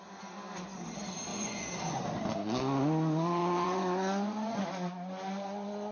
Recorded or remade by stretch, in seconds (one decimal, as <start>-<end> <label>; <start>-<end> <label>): 0.0-1.3 recorded; 1.3-2.0 remade; 2.0-3.4 recorded; 3.4-4.6 remade; 4.6-5.9 recorded